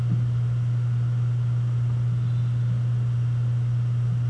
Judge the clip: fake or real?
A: real